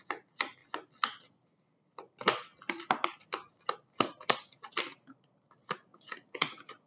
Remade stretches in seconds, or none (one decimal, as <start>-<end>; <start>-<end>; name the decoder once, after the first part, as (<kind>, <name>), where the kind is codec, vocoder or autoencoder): 5.9-6.9 (vocoder, Vocos)